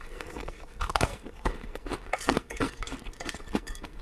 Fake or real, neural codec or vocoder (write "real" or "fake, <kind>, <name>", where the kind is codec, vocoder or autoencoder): fake, codec, SNAC